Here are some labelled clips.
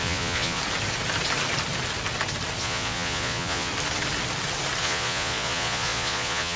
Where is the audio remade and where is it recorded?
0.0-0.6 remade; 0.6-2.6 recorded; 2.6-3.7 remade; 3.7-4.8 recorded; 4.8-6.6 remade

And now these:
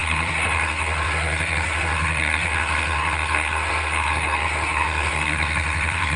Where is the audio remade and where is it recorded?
0.0-6.2 remade